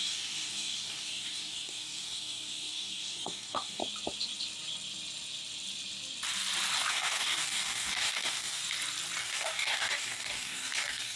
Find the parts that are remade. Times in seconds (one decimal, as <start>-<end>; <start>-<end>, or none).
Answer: 0.0-3.8; 6.9-8.6; 9.2-11.2